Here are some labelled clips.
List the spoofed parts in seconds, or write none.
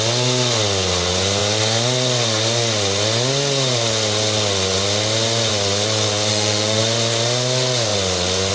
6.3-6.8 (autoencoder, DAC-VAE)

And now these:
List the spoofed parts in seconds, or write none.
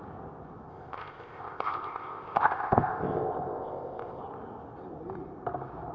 0.7-4.2 (codec, ZipCodec)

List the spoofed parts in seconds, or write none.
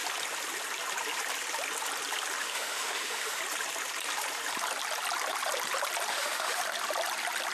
2.4-3.4 (autoencoder, DAC-VAE); 6.1-6.6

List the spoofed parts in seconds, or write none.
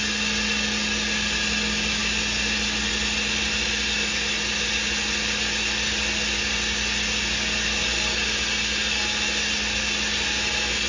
none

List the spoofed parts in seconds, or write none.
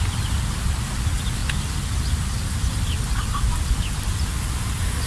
none